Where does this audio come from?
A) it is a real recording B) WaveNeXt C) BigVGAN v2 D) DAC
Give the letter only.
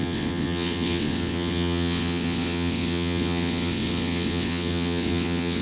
B